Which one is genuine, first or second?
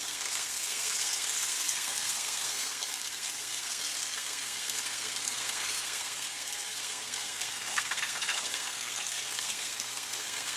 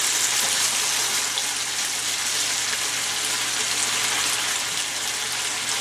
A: second